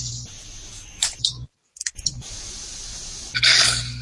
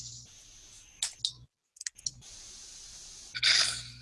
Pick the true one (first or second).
second